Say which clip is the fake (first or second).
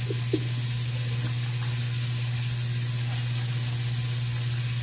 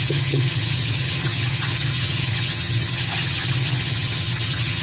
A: second